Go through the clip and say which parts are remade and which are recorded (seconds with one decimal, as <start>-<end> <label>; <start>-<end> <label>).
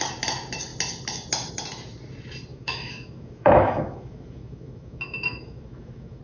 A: 0.0-2.5 recorded; 2.5-6.2 remade